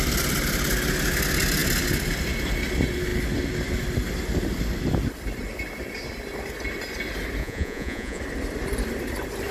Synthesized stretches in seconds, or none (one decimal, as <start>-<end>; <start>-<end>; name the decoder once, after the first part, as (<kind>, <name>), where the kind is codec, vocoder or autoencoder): 7.4-8.2 (vocoder, Vocos)